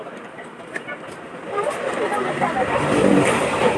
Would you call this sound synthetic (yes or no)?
no